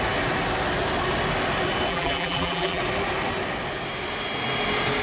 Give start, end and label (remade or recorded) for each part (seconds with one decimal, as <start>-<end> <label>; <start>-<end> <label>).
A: 0.0-1.9 recorded; 1.9-2.8 remade; 2.8-5.0 recorded